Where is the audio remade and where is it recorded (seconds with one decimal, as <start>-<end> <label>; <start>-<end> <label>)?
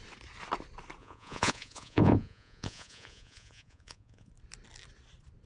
0.0-1.0 recorded; 1.0-4.3 remade; 4.3-5.5 recorded